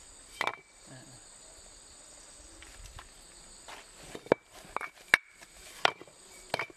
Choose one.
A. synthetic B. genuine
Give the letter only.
B